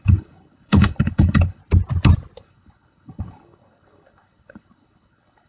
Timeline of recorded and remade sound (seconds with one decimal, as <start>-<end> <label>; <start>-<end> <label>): 0.0-1.6 remade; 1.6-2.4 recorded; 2.4-5.5 remade